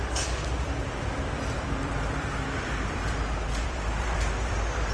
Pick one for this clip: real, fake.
fake